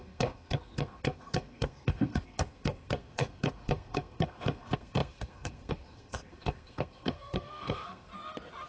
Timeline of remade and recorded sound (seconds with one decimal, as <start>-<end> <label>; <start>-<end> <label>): 0.0-8.1 remade; 8.1-8.7 recorded